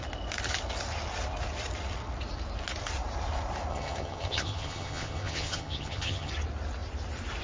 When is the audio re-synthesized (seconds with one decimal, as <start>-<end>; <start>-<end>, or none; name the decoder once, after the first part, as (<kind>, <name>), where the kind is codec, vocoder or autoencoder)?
3.7-6.3 (vocoder, HiFi-GAN)